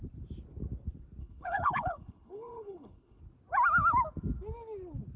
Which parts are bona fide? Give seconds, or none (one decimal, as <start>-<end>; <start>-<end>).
0.0-1.2; 3.2-5.2

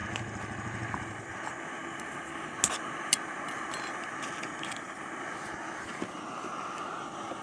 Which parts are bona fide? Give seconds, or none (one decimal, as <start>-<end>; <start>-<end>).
0.0-7.4